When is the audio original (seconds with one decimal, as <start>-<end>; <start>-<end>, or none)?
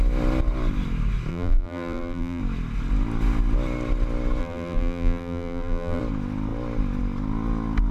0.0-1.3; 2.4-4.4; 6.0-7.9